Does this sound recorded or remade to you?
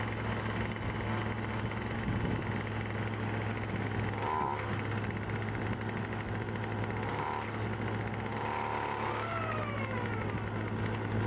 recorded